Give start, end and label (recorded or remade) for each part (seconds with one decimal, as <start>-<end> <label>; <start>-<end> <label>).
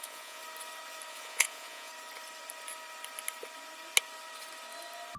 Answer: 0.0-0.4 remade; 0.4-1.1 recorded; 1.1-1.9 remade; 1.9-5.2 recorded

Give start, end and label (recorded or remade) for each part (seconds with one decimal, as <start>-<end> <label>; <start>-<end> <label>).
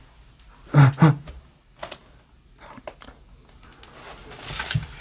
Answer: 0.0-5.0 recorded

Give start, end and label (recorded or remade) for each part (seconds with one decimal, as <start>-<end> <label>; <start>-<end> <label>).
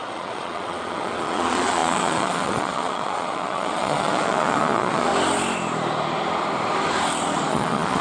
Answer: 0.0-5.1 remade; 5.1-7.5 recorded; 7.5-8.0 remade